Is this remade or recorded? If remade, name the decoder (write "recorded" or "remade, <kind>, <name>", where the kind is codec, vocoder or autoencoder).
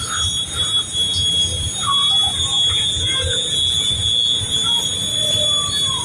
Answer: recorded